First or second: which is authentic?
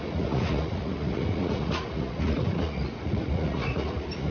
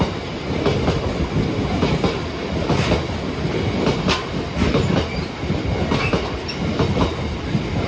second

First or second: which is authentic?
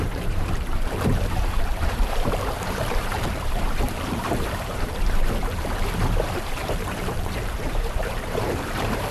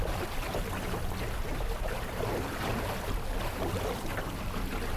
second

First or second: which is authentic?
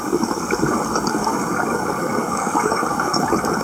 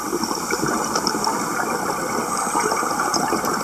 second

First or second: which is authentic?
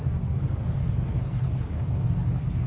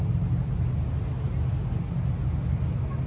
second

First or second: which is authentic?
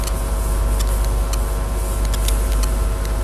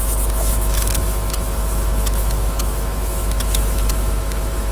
first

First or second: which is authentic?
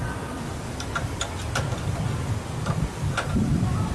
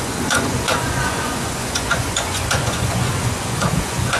first